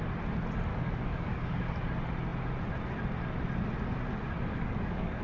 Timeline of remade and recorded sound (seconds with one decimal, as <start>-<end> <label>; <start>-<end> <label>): 0.0-0.7 recorded; 0.7-1.6 remade; 1.6-4.5 recorded; 4.5-5.2 remade